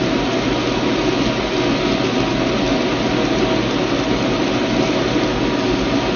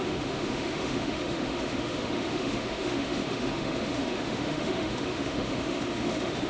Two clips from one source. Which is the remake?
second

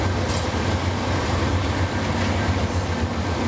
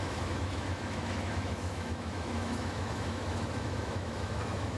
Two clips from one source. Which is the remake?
second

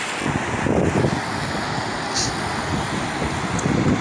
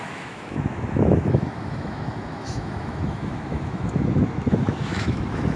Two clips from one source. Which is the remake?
second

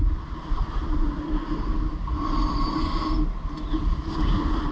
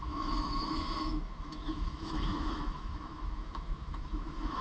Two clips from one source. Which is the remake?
second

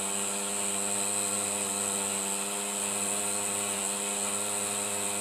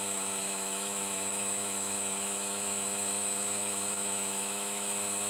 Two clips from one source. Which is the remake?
second